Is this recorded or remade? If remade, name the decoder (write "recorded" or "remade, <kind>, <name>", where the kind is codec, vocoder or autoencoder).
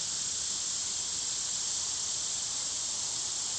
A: recorded